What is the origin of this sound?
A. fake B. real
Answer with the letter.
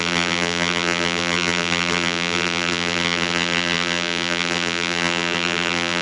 A